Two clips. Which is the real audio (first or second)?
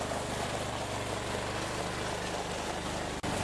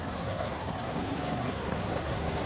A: first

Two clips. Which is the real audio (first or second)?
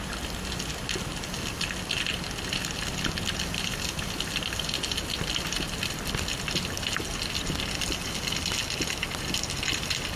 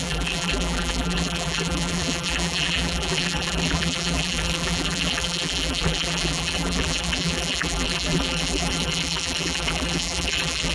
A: first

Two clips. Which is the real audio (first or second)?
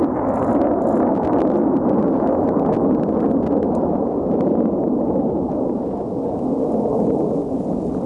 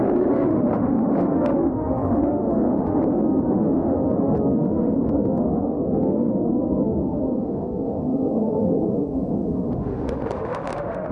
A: first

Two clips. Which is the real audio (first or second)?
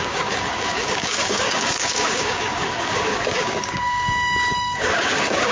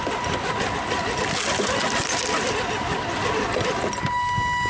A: second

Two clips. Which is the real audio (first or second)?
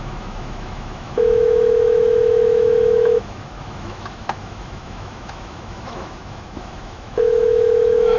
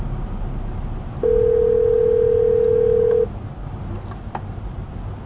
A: second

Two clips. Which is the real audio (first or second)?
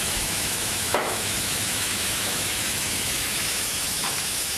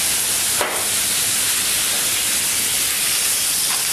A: second